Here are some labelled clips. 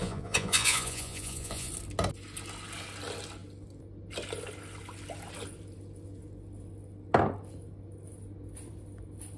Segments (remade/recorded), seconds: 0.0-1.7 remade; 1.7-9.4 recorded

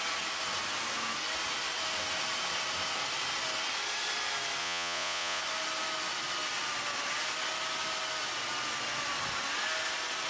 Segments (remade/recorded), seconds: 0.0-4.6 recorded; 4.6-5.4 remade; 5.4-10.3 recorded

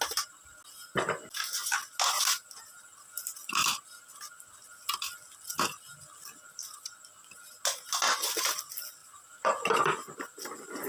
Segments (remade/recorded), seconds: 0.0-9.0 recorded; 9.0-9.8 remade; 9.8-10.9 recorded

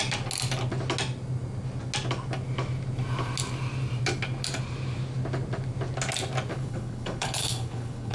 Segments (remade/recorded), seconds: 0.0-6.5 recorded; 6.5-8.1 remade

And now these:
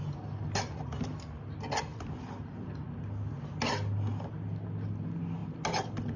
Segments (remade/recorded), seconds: 0.0-6.2 recorded

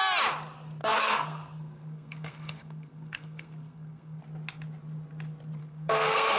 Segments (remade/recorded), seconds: 0.0-0.8 recorded; 0.8-4.2 remade; 4.2-5.6 recorded; 5.6-6.4 remade